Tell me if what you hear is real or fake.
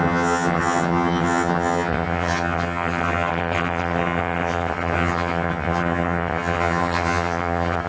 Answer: fake